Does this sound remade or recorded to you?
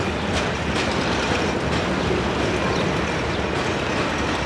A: recorded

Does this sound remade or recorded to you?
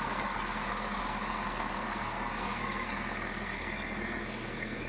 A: remade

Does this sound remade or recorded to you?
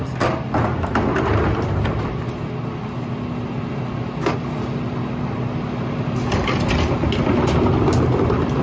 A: recorded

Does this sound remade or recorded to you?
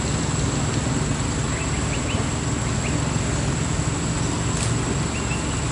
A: recorded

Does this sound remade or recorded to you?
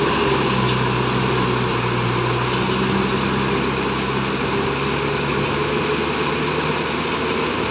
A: recorded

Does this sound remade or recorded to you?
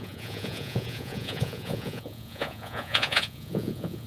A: remade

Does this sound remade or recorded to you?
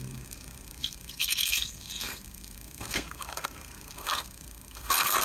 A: remade